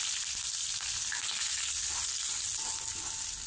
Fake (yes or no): no